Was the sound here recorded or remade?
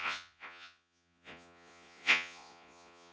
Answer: remade